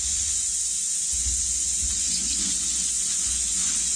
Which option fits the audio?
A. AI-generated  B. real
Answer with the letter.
A